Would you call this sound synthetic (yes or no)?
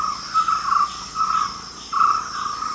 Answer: no